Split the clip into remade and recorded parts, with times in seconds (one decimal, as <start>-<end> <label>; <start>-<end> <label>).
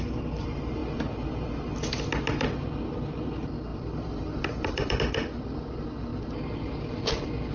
0.0-3.7 recorded; 3.7-5.0 remade; 5.0-7.5 recorded